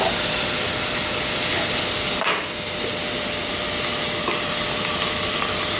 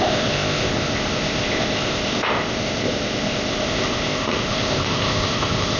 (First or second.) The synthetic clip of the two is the second